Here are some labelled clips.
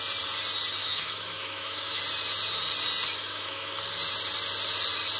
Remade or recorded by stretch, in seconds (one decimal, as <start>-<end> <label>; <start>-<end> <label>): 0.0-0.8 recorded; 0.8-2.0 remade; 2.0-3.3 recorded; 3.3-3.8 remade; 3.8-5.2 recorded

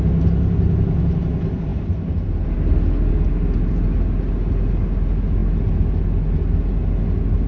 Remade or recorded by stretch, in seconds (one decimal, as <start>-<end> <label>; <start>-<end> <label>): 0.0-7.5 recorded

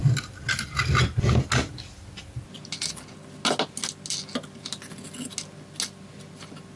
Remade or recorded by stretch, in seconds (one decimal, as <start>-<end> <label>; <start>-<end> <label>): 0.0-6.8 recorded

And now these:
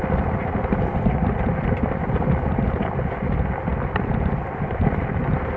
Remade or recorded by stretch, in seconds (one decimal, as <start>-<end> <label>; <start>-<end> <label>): 0.0-5.6 recorded